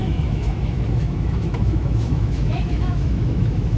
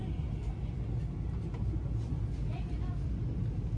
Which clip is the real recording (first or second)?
second